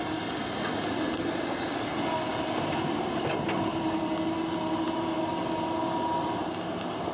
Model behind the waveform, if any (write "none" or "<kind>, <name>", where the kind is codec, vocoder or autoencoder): none